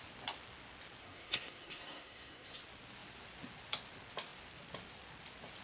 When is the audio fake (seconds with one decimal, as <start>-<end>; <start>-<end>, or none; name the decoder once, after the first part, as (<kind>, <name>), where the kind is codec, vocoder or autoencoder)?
1.0-2.6 (codec, SNAC)